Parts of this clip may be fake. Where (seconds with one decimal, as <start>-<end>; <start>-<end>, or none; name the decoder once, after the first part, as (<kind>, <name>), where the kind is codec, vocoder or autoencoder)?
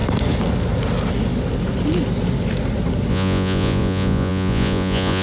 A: 3.1-5.2 (vocoder, Vocos)